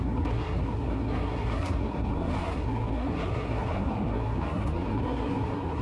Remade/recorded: remade